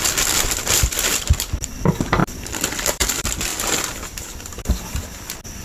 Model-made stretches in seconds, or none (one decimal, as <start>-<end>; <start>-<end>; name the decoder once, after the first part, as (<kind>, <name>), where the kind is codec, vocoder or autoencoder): 0.0-3.5 (vocoder, BigVGAN v2)